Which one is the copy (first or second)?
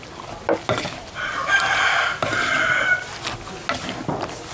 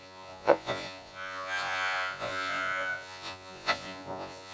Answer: second